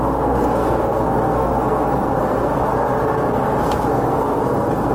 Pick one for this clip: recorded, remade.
remade